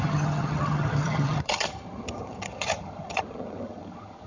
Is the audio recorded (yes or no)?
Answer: no